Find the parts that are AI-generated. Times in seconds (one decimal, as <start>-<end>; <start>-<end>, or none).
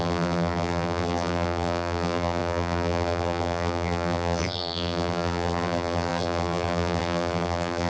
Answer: 0.0-7.9